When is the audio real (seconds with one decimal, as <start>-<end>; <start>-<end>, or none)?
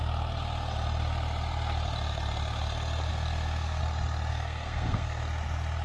0.0-3.1; 3.8-4.3; 5.2-5.8